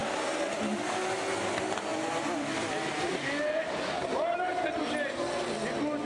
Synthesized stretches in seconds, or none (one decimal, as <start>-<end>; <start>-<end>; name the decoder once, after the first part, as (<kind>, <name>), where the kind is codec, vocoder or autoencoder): 1.9-3.1 (vocoder, BigVGAN v2)